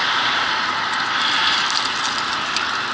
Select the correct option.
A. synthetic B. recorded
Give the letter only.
B